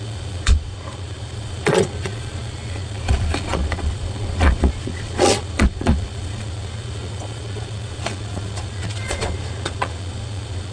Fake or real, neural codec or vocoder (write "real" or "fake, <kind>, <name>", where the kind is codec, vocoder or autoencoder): fake, vocoder, Vocos